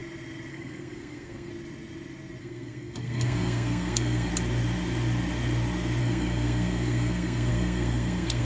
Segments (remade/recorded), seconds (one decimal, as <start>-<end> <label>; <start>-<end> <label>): 0.0-0.5 recorded; 0.5-1.5 remade; 1.5-2.4 recorded; 2.4-4.3 remade; 4.3-6.0 recorded; 6.0-8.4 remade